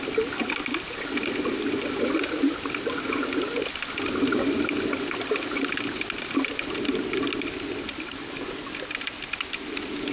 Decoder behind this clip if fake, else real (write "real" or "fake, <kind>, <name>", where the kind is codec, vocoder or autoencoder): real